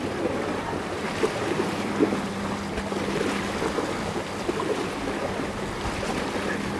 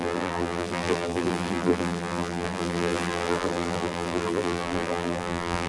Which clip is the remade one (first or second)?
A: second